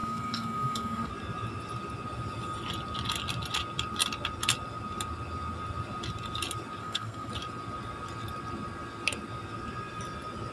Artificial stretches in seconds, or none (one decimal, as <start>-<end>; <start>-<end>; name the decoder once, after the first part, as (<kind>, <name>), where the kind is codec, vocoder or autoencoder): 0.0-1.1 (codec, SNAC); 6.8-7.3